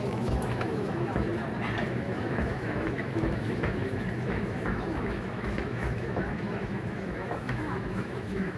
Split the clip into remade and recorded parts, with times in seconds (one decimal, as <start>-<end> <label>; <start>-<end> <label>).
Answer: 0.0-1.3 remade; 1.3-1.8 recorded; 1.8-8.6 remade